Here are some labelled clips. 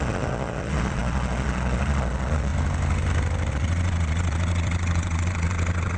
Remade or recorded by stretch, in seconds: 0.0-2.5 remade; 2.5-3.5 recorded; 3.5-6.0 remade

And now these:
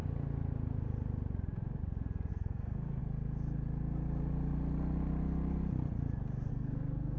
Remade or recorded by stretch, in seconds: 0.0-2.3 recorded; 2.3-3.0 remade; 3.0-6.5 recorded; 6.5-7.2 remade